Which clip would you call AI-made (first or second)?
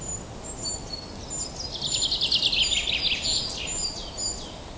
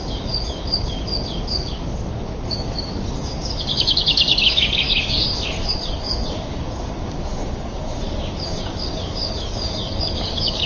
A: second